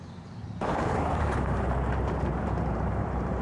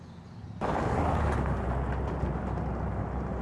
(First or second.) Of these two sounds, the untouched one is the second